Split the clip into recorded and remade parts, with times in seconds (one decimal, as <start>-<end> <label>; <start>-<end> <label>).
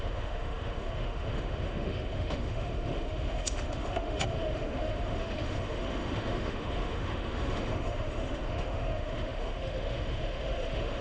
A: 0.0-11.0 remade